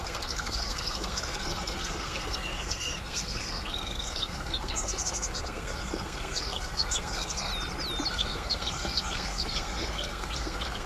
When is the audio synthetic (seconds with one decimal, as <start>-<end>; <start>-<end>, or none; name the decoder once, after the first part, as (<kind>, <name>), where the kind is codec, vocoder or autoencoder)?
0.0-7.5 (codec, SNAC); 8.1-10.9